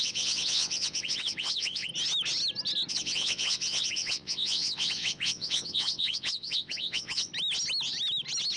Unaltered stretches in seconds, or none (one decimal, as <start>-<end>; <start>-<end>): 1.9-2.9; 7.3-8.6